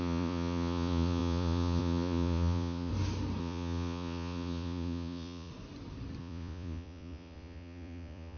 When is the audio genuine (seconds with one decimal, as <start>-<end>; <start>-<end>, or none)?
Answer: 2.9-3.4; 5.5-6.2